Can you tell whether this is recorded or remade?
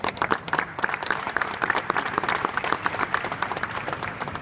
remade